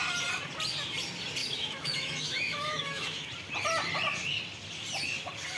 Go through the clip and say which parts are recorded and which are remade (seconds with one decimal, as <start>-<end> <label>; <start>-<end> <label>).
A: 0.0-1.4 recorded; 1.4-3.3 remade; 3.3-5.6 recorded